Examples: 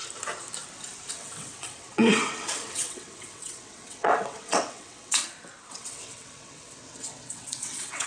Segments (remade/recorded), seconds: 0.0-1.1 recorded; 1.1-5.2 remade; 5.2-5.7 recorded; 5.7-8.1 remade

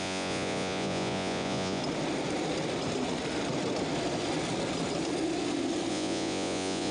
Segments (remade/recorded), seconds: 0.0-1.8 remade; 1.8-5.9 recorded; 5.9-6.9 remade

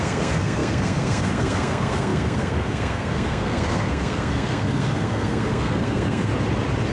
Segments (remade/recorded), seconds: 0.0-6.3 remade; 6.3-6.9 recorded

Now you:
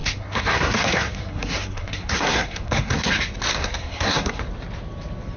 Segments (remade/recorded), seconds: 0.0-3.1 remade; 3.1-3.6 recorded; 3.6-4.4 remade; 4.4-5.4 recorded

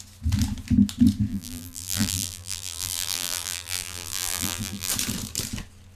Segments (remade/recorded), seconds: 0.0-1.3 recorded; 1.3-4.9 remade; 4.9-6.0 recorded